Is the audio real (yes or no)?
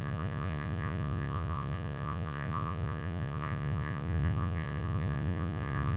no